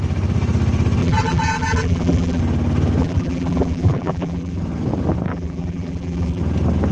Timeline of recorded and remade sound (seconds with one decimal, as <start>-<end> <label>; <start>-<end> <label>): 0.0-1.0 recorded; 1.0-2.4 remade; 2.4-3.0 recorded; 3.0-4.6 remade; 4.6-5.3 recorded; 5.3-6.4 remade; 6.4-6.9 recorded